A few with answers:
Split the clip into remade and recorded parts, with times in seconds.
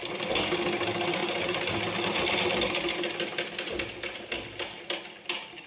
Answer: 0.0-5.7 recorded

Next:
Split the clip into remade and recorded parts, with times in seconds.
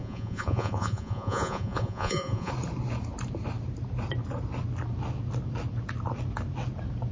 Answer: 0.0-2.5 remade; 2.5-7.1 recorded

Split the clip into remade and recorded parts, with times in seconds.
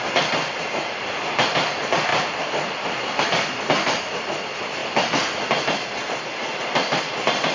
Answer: 0.0-7.5 recorded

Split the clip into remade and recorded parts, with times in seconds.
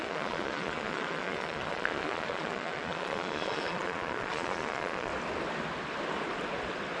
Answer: 0.0-5.1 remade; 5.1-7.0 recorded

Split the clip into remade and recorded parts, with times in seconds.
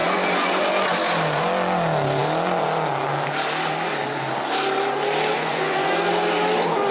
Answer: 0.0-0.6 remade; 0.6-5.3 recorded; 5.3-5.9 remade; 5.9-6.9 recorded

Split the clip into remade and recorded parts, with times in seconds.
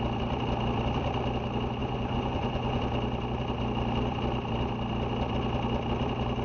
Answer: 0.0-1.8 recorded; 1.8-2.8 remade; 2.8-6.4 recorded